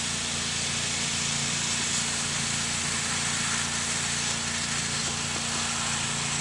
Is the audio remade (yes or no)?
no